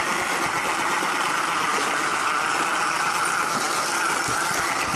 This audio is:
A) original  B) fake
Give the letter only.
A